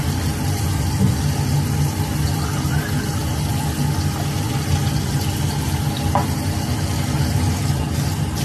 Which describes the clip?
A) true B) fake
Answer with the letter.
A